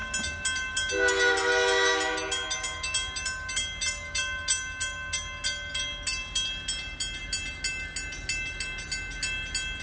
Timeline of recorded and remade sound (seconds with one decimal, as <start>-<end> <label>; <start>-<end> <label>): 0.0-9.8 recorded